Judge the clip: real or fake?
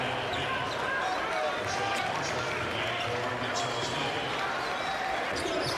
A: real